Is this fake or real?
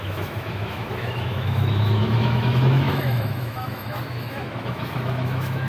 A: fake